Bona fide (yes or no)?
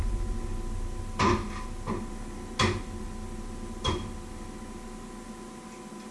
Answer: yes